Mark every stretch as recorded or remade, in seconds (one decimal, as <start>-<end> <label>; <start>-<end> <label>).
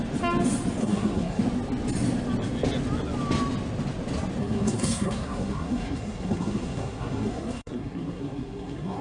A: 0.0-0.8 recorded; 0.8-1.4 remade; 1.4-4.4 recorded; 4.4-9.0 remade